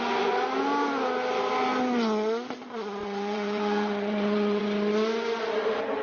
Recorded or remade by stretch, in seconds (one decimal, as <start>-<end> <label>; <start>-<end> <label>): 0.0-3.0 recorded; 3.0-4.6 remade; 4.6-6.0 recorded